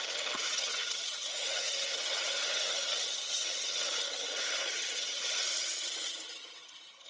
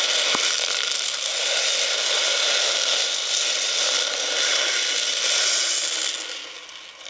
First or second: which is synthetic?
first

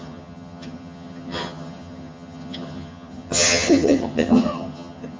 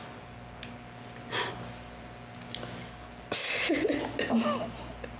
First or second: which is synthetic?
first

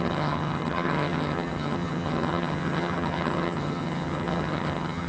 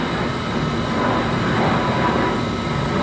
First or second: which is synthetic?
first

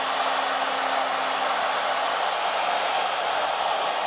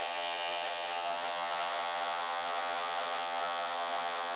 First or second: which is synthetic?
second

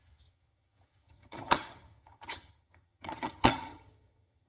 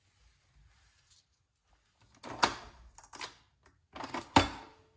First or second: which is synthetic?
first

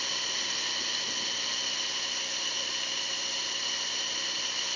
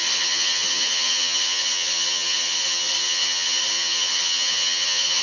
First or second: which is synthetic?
second